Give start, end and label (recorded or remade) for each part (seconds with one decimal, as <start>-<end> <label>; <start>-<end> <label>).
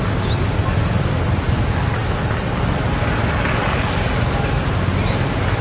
0.0-5.6 recorded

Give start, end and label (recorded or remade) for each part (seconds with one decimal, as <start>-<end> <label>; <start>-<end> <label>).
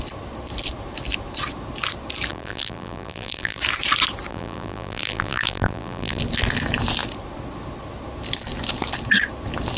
0.0-2.3 recorded; 2.3-3.6 remade; 3.6-4.3 recorded; 4.3-6.2 remade; 6.2-9.8 recorded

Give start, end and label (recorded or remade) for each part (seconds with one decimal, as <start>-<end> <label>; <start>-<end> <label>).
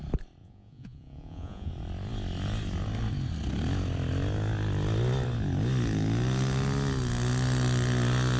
0.0-0.4 recorded; 0.4-1.7 remade; 1.7-8.4 recorded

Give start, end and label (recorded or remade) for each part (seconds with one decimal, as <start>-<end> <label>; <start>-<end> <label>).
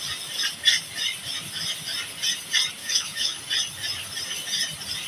0.0-2.8 recorded; 2.8-3.4 remade; 3.4-5.1 recorded